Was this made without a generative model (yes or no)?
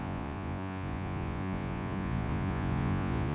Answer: no